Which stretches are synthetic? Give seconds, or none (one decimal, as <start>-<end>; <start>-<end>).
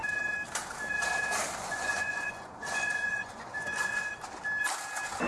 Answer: 1.6-4.1